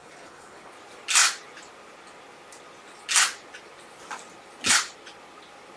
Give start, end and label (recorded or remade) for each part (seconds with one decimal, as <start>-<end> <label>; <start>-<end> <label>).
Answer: 0.0-0.7 remade; 0.7-5.8 recorded